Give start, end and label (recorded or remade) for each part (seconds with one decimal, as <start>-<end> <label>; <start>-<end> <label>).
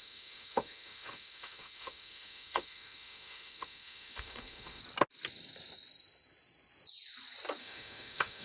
0.0-4.8 remade; 4.8-7.6 recorded; 7.6-8.4 remade